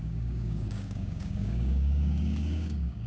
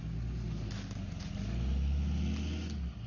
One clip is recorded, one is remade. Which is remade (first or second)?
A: first